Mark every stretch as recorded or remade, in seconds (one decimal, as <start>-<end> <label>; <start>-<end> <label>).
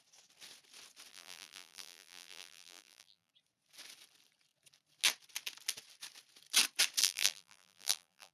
0.0-1.1 recorded; 1.1-3.3 remade; 3.3-7.0 recorded; 7.0-8.3 remade